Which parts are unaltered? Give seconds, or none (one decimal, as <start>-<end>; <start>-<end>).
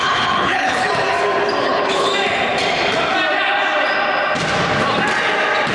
0.9-1.6; 2.1-5.7